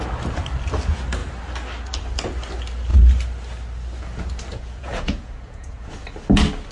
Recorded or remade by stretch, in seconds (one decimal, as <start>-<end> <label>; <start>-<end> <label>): 0.0-4.5 recorded; 4.5-5.9 remade; 5.9-6.7 recorded